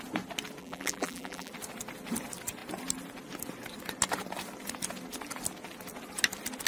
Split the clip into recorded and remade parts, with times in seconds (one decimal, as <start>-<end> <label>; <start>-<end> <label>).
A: 0.0-0.6 recorded; 0.6-1.5 remade; 1.5-6.7 recorded